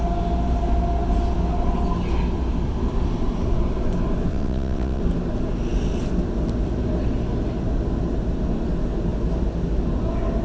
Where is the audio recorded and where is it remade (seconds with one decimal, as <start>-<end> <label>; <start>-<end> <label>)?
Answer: 0.0-4.3 recorded; 4.3-5.0 remade; 5.0-10.4 recorded